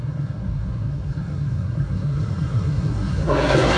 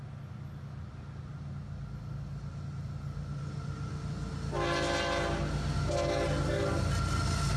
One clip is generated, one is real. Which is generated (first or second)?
first